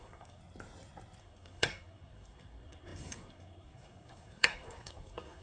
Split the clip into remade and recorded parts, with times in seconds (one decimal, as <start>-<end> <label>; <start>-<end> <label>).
0.0-0.4 remade; 0.4-1.2 recorded; 1.2-5.4 remade